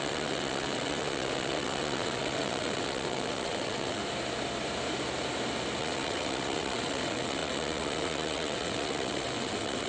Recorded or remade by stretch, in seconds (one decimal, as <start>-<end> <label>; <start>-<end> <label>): 0.0-4.0 remade; 4.0-5.8 recorded; 5.8-9.9 remade

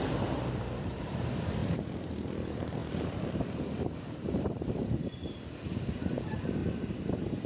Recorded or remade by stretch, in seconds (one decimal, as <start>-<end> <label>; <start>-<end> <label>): 0.0-7.5 remade

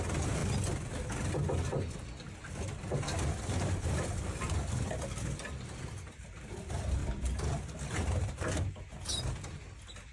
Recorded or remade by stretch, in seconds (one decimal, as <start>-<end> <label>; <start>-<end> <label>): 0.0-10.1 recorded